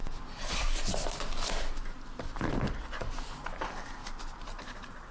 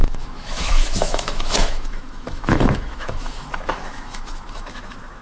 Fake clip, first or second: second